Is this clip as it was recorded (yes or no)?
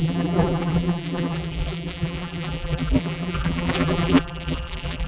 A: no